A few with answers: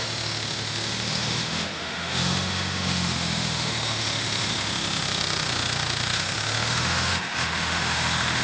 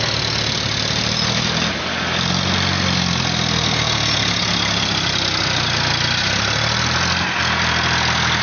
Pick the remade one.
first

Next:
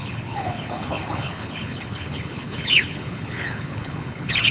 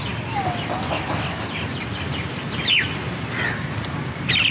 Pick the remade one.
first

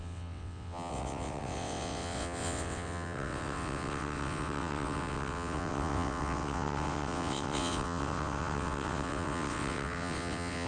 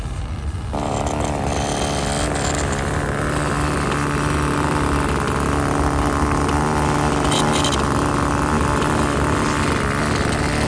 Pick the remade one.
first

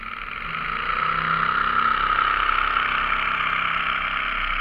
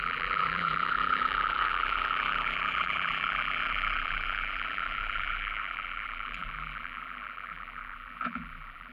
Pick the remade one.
second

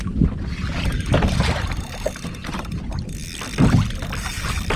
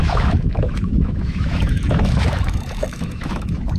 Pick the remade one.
second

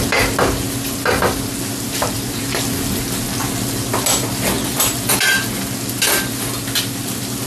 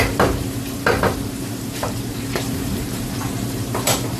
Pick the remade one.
second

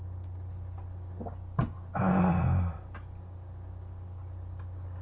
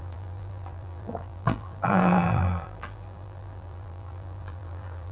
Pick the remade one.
second